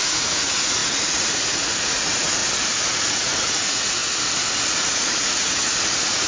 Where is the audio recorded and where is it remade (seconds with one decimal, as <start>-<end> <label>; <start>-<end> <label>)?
0.0-2.4 remade; 2.4-2.9 recorded; 2.9-4.0 remade; 4.0-4.7 recorded; 4.7-6.3 remade